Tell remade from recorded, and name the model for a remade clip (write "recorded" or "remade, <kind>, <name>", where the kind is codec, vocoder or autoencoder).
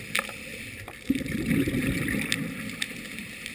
remade, vocoder, BigVGAN v2